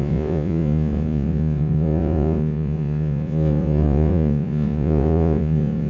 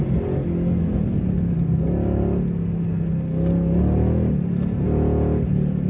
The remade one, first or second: first